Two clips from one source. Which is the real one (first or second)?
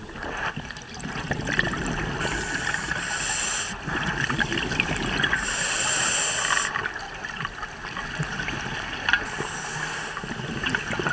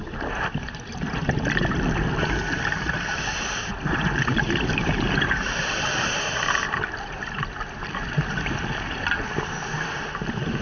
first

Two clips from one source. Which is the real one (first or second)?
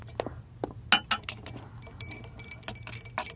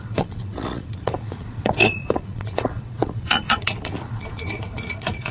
first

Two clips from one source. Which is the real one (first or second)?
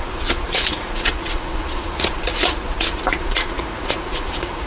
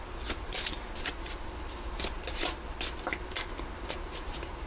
second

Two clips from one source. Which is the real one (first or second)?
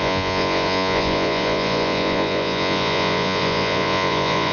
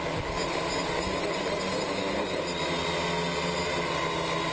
second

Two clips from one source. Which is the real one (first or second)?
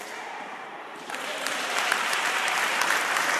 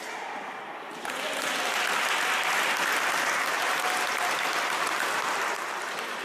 second